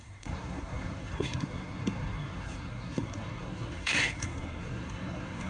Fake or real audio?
fake